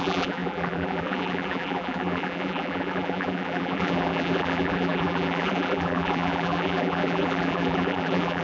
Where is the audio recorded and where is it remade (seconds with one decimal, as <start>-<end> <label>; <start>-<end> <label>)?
0.0-8.4 remade